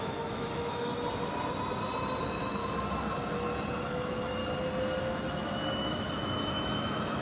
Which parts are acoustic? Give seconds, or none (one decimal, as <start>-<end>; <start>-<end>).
0.9-2.2; 2.6-3.8; 4.4-5.0